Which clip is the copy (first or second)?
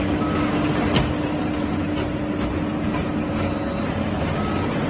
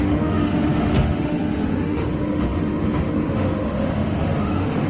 second